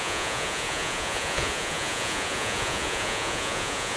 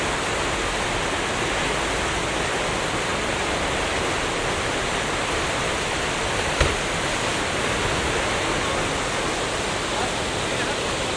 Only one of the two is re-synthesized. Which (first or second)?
first